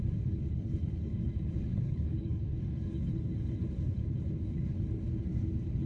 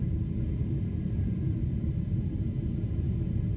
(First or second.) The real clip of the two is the second